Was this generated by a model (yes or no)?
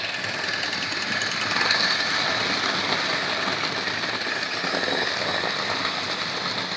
no